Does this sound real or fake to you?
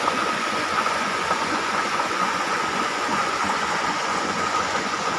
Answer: fake